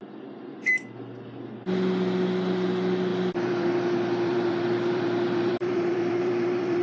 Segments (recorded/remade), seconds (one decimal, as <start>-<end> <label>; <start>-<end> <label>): 0.0-3.1 recorded; 3.1-6.8 remade

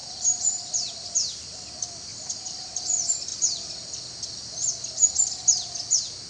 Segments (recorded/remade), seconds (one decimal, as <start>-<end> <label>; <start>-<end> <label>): 0.0-0.7 remade; 0.7-2.1 recorded; 2.1-2.8 remade; 2.8-6.3 recorded

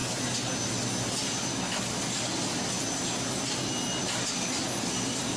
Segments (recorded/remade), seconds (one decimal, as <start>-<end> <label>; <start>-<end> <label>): 0.0-5.4 recorded

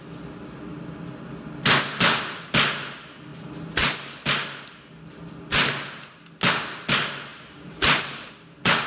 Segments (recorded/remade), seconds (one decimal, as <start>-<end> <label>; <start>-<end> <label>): 0.0-7.3 recorded; 7.3-8.3 remade; 8.3-8.9 recorded

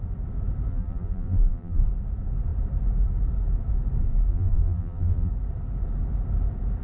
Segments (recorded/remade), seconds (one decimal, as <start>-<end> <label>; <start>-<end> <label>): 0.0-0.7 recorded; 0.7-1.8 remade; 1.8-4.3 recorded; 4.3-5.3 remade; 5.3-6.8 recorded

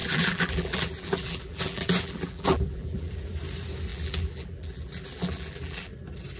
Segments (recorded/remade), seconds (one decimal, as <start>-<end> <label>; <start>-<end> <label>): 0.0-3.1 remade; 3.1-3.9 recorded; 3.9-5.9 remade; 5.9-6.4 recorded

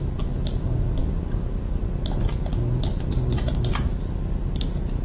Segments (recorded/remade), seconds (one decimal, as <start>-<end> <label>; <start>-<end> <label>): 0.0-1.0 recorded; 1.0-1.5 remade; 1.5-5.0 recorded